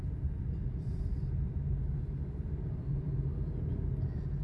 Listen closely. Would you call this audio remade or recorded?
recorded